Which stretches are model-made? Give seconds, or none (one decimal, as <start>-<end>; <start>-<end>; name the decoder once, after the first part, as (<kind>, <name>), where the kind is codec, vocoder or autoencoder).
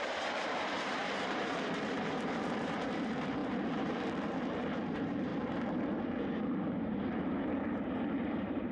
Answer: 0.0-8.7 (vocoder, BigVGAN v2)